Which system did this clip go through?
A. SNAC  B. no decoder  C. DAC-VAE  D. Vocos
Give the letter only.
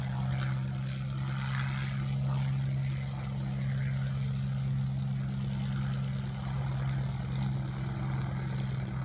B